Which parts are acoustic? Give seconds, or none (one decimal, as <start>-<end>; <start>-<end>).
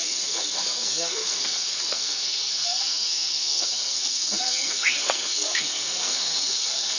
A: none